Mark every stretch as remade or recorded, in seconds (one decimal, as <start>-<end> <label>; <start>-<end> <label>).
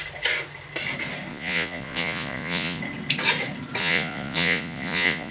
0.0-1.3 recorded; 1.3-2.8 remade; 2.8-3.8 recorded; 3.8-5.3 remade